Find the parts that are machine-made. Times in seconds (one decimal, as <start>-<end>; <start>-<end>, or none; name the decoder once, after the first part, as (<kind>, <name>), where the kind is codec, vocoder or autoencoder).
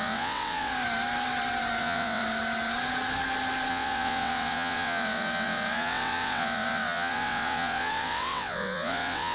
0.0-0.7 (vocoder, WaveNeXt); 1.8-2.2; 3.7-9.3